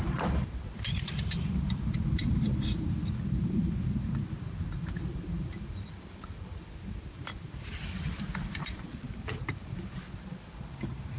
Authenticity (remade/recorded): remade